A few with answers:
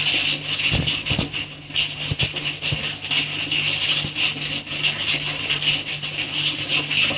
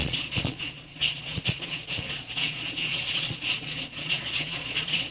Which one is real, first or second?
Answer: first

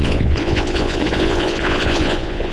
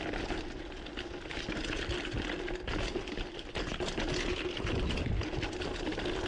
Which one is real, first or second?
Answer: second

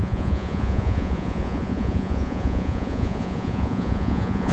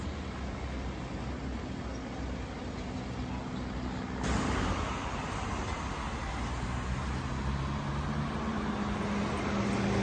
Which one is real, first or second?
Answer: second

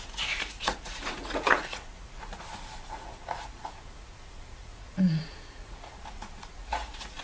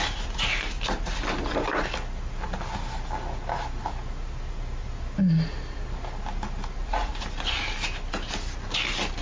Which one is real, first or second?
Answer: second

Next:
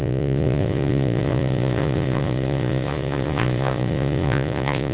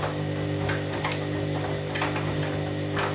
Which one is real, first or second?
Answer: second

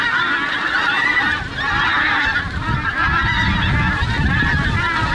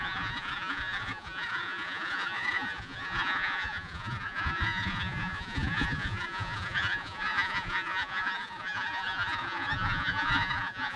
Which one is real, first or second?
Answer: first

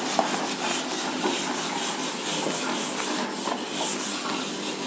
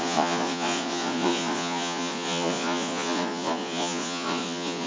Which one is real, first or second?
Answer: first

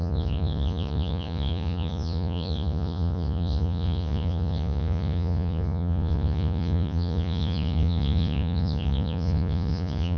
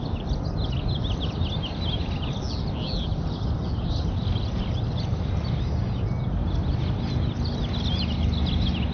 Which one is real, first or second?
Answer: second